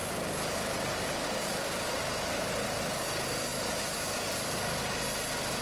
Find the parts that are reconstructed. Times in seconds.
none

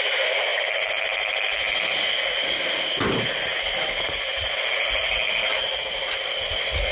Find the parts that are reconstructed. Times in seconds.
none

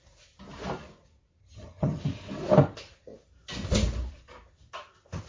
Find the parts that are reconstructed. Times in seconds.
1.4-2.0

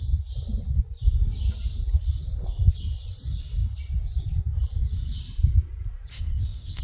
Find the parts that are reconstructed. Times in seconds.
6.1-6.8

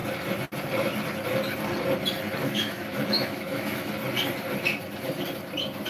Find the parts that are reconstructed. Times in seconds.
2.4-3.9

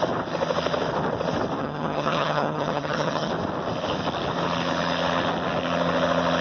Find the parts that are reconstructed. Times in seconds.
1.6-3.3